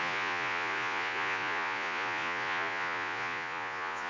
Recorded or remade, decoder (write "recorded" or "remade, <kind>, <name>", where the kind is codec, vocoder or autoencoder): remade, vocoder, Vocos